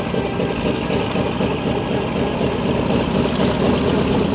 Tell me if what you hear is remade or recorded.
recorded